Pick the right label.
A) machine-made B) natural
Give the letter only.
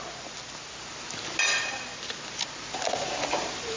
B